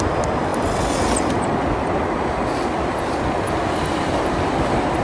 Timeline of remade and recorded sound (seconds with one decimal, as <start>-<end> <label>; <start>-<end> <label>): 0.0-5.0 recorded